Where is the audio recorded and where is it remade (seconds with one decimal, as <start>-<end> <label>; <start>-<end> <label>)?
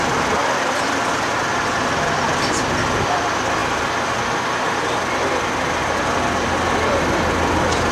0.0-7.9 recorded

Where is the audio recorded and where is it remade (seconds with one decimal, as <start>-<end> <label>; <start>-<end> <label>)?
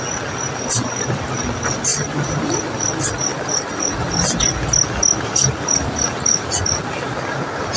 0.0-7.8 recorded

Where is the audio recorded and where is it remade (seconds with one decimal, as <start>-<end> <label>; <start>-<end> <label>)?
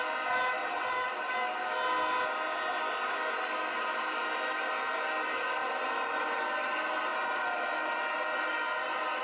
0.0-0.6 recorded; 0.6-1.3 remade; 1.3-5.6 recorded; 5.6-6.2 remade; 6.2-7.1 recorded; 7.1-9.2 remade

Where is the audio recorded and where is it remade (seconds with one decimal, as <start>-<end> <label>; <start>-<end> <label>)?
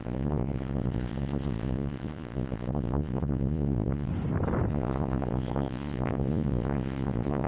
0.0-4.1 remade; 4.1-4.7 recorded; 4.7-7.5 remade